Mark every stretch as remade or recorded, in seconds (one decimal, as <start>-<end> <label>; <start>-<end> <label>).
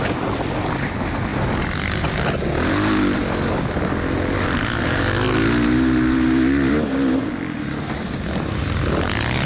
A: 0.0-9.5 recorded